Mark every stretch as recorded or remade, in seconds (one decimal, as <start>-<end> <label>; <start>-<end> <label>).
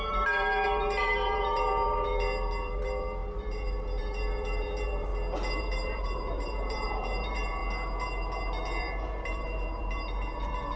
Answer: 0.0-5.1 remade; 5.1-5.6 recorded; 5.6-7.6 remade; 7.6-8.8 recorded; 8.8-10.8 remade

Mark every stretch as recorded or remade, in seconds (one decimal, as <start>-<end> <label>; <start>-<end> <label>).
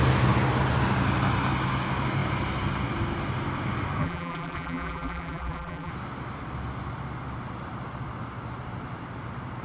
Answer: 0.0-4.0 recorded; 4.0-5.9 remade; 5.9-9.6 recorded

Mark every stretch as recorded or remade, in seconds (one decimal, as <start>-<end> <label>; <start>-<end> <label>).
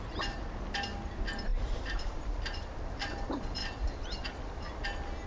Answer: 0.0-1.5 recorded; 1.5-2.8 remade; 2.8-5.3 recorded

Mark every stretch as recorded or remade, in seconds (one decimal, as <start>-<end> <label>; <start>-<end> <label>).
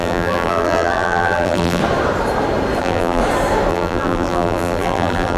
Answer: 0.0-1.8 remade; 1.8-2.8 recorded; 2.8-3.2 remade; 3.2-3.7 recorded; 3.7-5.4 remade